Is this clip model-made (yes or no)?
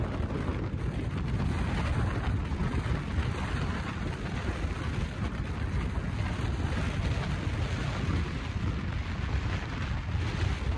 no